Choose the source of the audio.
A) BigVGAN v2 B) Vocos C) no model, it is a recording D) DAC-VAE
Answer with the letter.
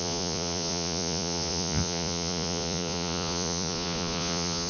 B